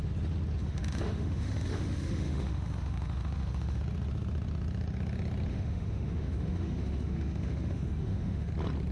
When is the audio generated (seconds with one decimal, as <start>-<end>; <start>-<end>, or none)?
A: 0.6-3.8; 5.5-8.5